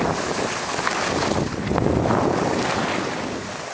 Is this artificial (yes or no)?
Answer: no